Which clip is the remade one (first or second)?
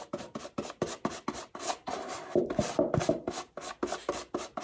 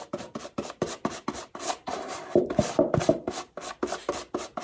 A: second